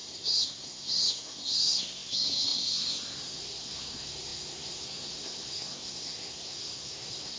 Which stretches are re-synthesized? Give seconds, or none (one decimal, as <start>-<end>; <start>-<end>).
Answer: 0.0-7.4